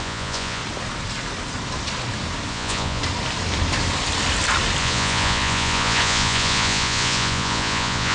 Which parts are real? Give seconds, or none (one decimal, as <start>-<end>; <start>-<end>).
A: 0.6-2.5; 3.0-4.8